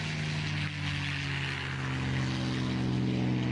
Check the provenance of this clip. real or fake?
real